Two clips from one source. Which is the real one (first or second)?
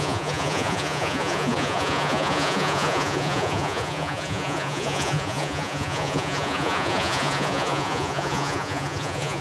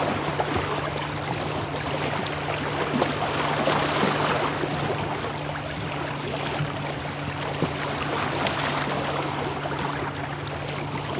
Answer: second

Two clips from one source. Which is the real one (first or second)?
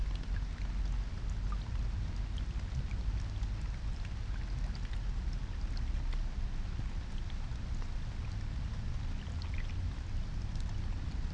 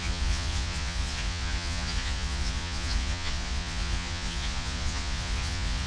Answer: first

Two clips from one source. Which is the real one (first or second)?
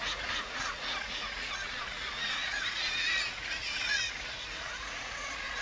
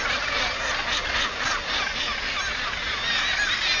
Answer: second